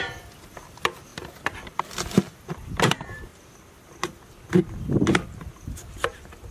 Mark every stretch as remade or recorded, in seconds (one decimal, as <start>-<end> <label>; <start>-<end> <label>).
0.0-1.1 remade; 1.1-2.5 recorded; 2.5-3.3 remade; 3.3-6.5 recorded